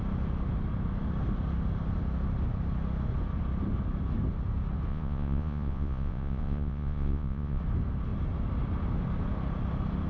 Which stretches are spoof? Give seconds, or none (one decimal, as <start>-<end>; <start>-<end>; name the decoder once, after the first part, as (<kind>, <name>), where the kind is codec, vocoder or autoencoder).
4.9-7.6 (vocoder, Vocos)